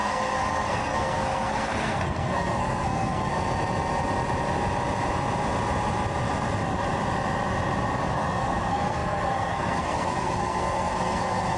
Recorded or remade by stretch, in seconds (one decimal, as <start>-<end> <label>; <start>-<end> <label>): 0.0-3.3 remade; 3.3-8.1 recorded; 8.1-11.6 remade